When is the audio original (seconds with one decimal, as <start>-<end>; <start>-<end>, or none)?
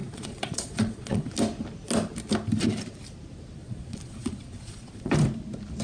1.3-3.6; 5.1-5.8